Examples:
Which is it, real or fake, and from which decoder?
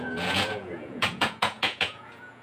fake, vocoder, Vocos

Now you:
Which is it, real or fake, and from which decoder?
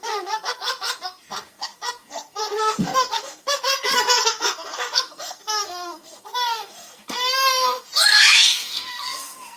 fake, codec, SNAC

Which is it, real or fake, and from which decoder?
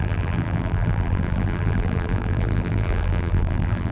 fake, vocoder, BigVGAN v2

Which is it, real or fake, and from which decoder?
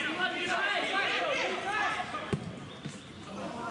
real